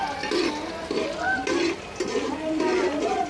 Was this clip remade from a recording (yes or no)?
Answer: no